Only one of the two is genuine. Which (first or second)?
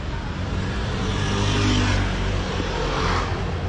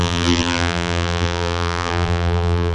first